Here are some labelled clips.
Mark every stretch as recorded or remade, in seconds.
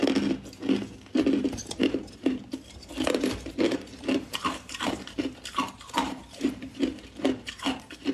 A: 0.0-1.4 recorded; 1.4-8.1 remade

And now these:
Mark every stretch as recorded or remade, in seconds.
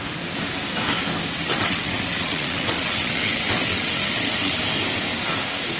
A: 0.0-1.4 recorded; 1.4-4.5 remade; 4.5-5.8 recorded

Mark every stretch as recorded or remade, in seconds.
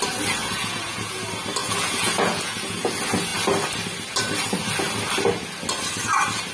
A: 0.0-0.4 recorded; 0.4-1.2 remade; 1.2-1.6 recorded; 1.6-2.9 remade; 2.9-6.5 recorded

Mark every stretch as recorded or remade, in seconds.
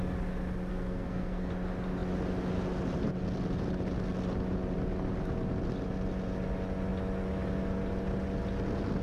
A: 0.0-0.7 recorded; 0.7-1.5 remade; 1.5-9.0 recorded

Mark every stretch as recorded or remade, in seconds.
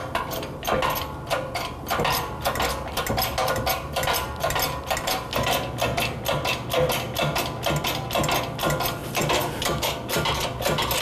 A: 0.0-0.6 remade; 0.6-11.0 recorded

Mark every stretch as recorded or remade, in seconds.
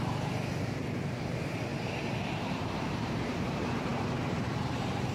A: 0.0-1.7 remade; 1.7-2.3 recorded; 2.3-5.1 remade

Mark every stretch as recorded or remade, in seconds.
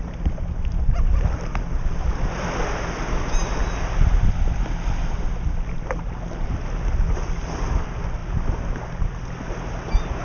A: 0.0-10.2 recorded